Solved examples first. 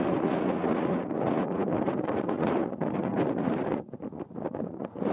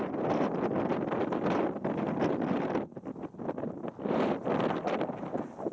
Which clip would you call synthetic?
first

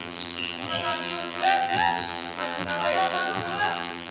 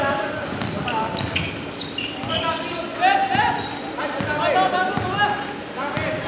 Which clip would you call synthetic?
first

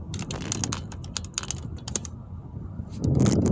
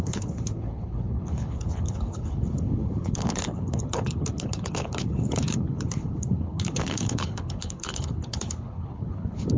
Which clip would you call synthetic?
second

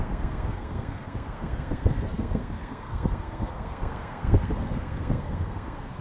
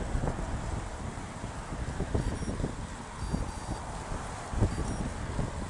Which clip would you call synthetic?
first